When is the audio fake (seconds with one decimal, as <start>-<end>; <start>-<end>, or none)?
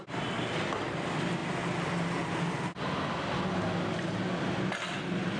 none